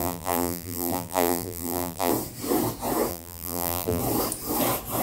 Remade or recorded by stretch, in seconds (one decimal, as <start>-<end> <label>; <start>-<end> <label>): 0.0-2.1 remade; 2.1-3.1 recorded; 3.1-4.0 remade; 4.0-5.0 recorded

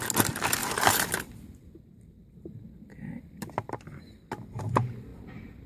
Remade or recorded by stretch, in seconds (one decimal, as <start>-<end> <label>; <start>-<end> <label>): 0.0-0.6 recorded; 0.6-4.0 remade; 4.0-5.7 recorded

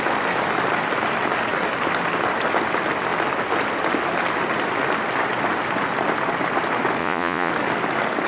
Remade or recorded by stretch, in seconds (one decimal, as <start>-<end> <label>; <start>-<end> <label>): 0.0-7.0 recorded; 7.0-7.5 remade; 7.5-8.3 recorded

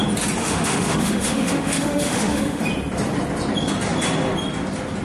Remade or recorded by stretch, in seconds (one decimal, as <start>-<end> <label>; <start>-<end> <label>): 0.0-0.4 recorded; 0.4-2.6 remade; 2.6-5.0 recorded

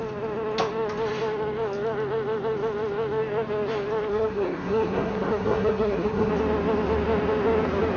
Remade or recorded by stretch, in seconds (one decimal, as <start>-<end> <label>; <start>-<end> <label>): 0.0-4.1 recorded; 4.1-6.3 remade; 6.3-8.0 recorded

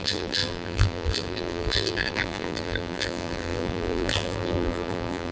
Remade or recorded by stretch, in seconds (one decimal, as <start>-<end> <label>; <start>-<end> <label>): 0.0-5.3 remade

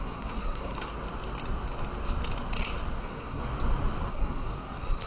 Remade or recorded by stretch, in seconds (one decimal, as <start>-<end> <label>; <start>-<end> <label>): 0.0-0.9 remade; 0.9-3.0 recorded; 3.0-3.4 remade; 3.4-4.1 recorded; 4.1-5.1 remade